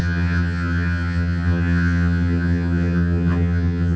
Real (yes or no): no